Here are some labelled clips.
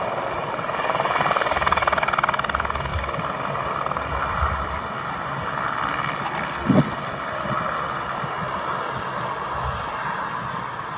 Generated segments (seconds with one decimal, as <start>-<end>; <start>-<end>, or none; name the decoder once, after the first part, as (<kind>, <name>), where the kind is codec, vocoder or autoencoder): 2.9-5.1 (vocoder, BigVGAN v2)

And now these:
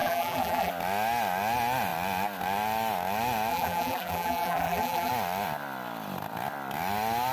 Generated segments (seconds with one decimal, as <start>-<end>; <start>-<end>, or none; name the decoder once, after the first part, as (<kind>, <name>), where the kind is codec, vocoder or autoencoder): 0.0-0.7 (vocoder, BigVGAN v2); 3.5-5.1

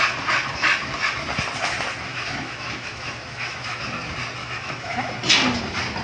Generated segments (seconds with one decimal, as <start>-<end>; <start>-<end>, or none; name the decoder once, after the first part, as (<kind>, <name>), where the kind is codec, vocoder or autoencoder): 2.1-3.8 (autoencoder, DAC-VAE); 4.4-5.2

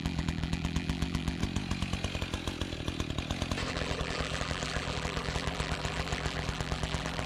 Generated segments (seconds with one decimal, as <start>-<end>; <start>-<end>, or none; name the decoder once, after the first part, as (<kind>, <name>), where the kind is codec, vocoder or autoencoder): 0.0-1.4 (vocoder, BigVGAN v2); 3.7-7.3